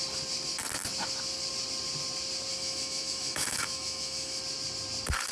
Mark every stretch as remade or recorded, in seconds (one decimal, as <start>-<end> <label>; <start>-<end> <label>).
0.0-2.5 recorded; 2.5-4.4 remade; 4.4-5.3 recorded